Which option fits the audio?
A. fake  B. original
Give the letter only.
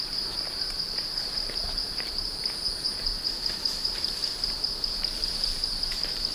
A